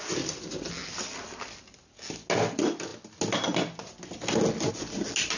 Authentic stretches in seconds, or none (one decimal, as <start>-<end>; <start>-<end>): 0.0-5.4